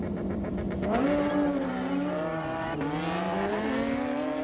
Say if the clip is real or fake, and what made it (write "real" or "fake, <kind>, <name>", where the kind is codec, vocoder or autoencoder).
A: fake, vocoder, BigVGAN v2